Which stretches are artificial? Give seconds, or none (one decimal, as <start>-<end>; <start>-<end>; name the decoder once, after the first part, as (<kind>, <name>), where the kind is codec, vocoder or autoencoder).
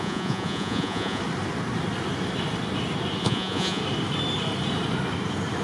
0.0-1.2 (vocoder, Vocos); 3.2-3.8